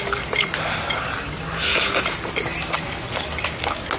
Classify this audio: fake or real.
real